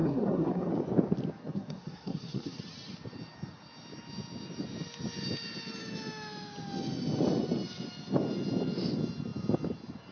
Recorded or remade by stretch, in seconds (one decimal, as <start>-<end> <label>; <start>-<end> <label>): 0.0-0.7 remade; 0.7-1.4 recorded; 1.4-2.6 remade; 2.6-10.1 recorded